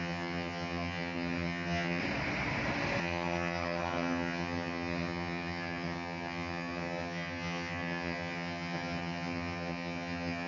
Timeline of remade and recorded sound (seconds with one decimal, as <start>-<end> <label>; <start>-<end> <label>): 0.0-2.0 remade; 2.0-3.0 recorded; 3.0-10.5 remade